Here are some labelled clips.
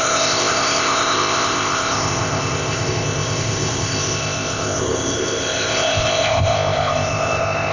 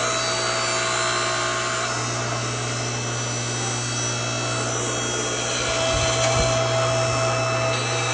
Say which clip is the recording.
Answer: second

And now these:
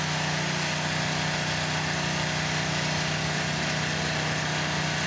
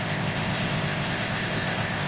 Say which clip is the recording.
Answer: first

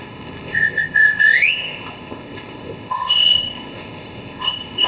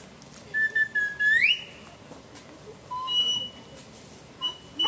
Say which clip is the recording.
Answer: second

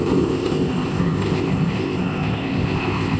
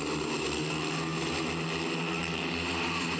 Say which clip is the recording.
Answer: second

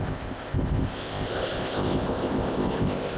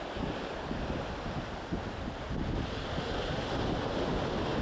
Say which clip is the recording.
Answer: second